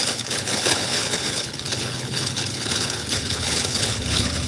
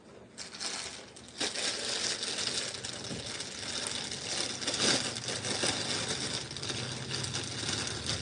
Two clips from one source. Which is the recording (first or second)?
second